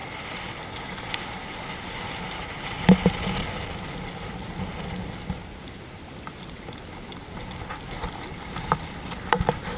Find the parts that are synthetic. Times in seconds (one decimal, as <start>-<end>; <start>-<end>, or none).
none